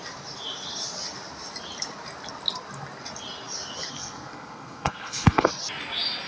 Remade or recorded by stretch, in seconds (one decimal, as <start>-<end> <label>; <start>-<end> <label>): 0.0-3.9 recorded; 3.9-5.5 remade; 5.5-6.3 recorded